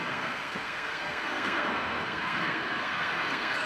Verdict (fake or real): fake